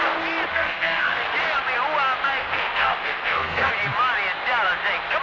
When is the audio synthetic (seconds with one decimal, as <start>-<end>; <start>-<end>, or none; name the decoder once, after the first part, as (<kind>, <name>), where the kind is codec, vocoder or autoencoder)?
0.5-1.2 (codec, SNAC); 2.4-3.7